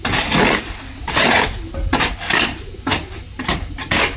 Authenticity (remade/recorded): recorded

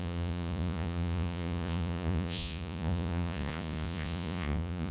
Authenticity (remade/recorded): remade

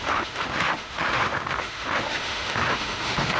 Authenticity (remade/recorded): remade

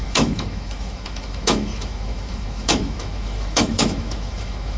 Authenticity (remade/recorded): remade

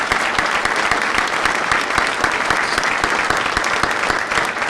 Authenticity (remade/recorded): recorded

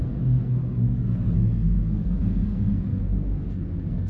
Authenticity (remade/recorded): remade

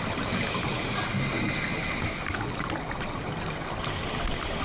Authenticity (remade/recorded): recorded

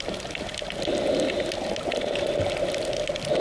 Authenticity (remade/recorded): recorded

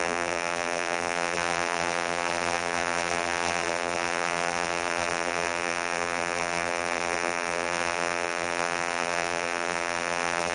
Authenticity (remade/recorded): remade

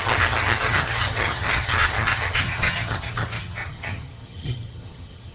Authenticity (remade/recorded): remade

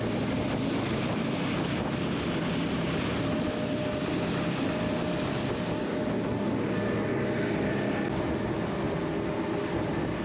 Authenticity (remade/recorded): recorded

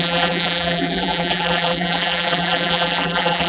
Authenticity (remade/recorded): remade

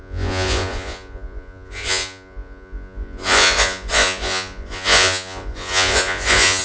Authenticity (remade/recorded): remade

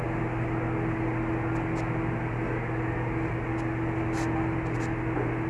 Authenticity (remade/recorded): recorded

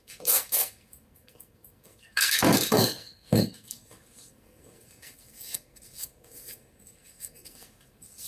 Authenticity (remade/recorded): remade